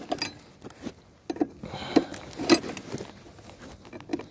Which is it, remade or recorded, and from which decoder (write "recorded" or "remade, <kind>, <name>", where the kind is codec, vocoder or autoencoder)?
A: recorded